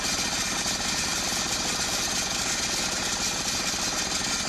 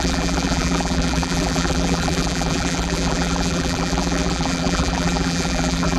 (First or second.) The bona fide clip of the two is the first